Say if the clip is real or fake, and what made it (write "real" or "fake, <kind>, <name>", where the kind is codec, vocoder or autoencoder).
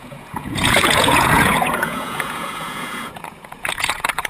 fake, vocoder, Vocos